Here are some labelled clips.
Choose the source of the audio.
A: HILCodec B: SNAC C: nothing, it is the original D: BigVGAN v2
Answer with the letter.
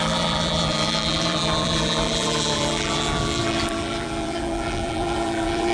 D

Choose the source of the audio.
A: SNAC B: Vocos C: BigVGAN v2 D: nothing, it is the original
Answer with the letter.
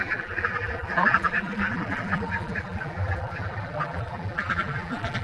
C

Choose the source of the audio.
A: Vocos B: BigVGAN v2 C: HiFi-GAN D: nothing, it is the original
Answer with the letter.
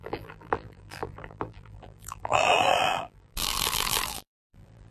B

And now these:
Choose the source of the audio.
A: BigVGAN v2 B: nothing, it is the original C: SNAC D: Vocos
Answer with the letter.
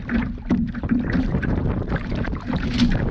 A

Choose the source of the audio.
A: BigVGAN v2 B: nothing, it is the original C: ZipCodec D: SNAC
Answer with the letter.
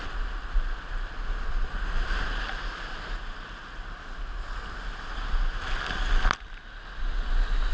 B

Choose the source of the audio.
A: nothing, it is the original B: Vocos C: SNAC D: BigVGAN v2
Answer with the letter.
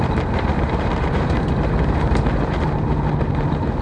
D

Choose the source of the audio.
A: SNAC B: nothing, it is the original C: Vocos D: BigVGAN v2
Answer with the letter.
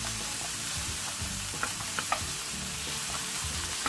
D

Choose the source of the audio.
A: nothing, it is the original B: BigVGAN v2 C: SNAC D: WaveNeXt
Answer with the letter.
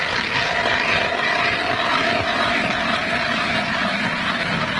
A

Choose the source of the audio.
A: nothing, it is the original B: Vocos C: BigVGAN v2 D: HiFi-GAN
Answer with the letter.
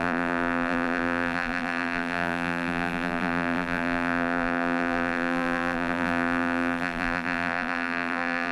C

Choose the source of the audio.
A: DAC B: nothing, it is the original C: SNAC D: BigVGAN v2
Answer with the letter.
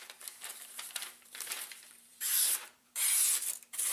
D